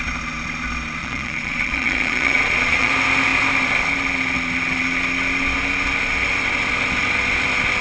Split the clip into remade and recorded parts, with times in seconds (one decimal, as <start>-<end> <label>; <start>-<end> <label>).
0.0-1.0 recorded; 1.0-2.9 remade; 2.9-7.8 recorded